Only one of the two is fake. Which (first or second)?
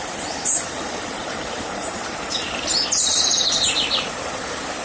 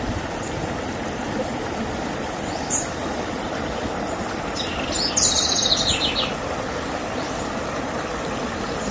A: first